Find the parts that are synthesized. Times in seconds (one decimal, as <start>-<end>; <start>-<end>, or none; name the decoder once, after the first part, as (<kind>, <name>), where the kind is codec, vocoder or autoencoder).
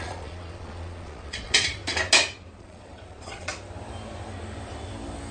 0.0-1.8 (vocoder, Vocos); 2.6-3.5